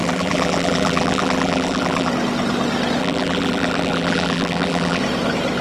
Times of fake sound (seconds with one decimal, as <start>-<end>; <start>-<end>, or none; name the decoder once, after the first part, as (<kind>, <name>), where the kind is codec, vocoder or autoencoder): 0.0-2.1 (vocoder, BigVGAN v2); 3.0-5.0